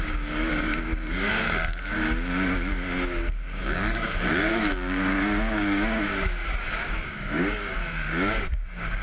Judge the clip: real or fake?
fake